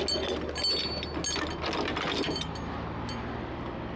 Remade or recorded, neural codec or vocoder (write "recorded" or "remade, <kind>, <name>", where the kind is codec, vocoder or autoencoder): recorded